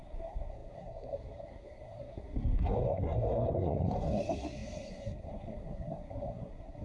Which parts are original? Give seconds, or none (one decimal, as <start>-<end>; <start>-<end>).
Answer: none